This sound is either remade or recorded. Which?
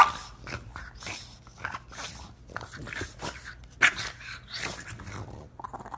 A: recorded